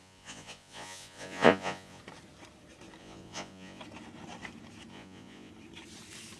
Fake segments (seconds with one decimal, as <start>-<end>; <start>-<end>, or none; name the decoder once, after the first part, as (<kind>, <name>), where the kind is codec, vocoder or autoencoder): 0.0-2.0 (vocoder, Vocos); 3.0-3.8; 4.9-5.5